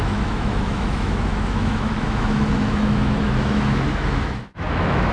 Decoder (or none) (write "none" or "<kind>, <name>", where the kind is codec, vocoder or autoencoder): autoencoder, DAC-VAE